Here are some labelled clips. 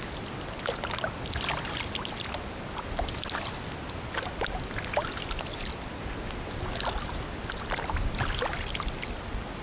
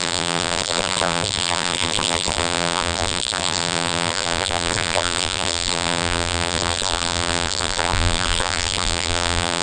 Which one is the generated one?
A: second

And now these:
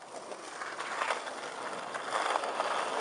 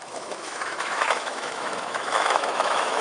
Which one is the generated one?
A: second